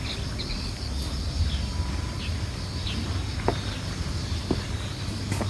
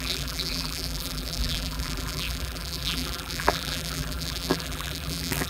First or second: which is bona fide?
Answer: first